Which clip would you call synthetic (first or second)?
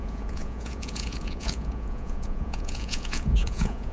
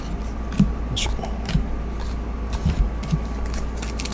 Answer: first